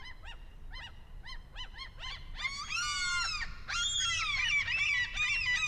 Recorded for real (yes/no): yes